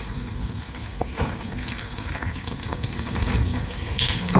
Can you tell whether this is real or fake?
fake